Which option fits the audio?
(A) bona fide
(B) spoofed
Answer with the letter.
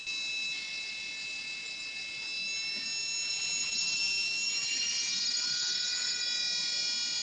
A